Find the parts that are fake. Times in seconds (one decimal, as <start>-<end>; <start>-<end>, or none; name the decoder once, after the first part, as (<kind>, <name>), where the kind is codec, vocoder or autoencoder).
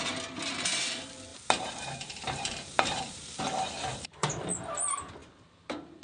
1.3-3.4 (vocoder, BigVGAN v2); 3.9-4.6; 5.2-6.0